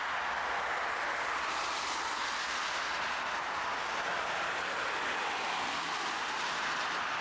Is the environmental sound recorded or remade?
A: recorded